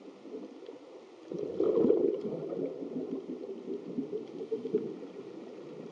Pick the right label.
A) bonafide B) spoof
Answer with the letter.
A